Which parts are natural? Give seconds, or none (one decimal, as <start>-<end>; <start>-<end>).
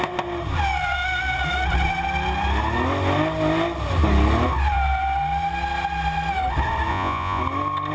0.0-6.9; 7.4-7.9